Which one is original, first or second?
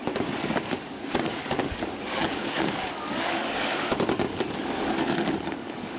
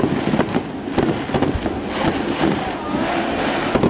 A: second